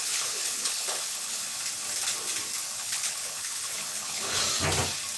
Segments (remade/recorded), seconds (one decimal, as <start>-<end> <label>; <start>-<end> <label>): 0.0-1.5 remade; 1.5-2.8 recorded; 2.8-4.4 remade; 4.4-5.2 recorded